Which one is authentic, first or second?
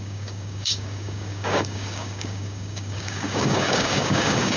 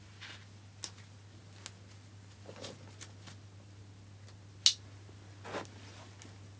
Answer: second